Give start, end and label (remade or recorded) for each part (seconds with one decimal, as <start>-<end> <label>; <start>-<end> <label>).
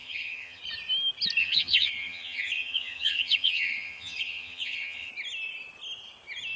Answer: 0.0-0.6 remade; 0.6-1.4 recorded; 1.4-5.1 remade; 5.1-6.6 recorded